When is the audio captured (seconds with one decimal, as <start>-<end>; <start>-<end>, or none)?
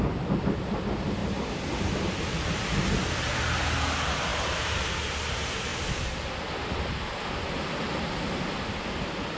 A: 0.0-9.4